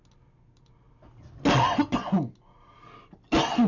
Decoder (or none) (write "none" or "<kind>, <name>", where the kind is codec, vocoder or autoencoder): none